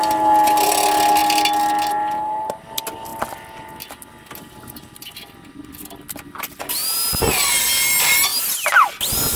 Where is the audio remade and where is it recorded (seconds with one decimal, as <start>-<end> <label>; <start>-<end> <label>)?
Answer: 0.0-9.4 recorded